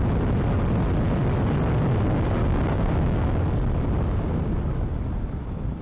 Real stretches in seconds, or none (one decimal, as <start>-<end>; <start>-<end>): 0.0-2.4; 3.4-5.8